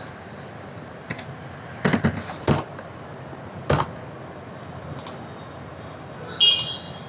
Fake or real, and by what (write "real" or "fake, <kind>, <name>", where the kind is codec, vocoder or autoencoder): real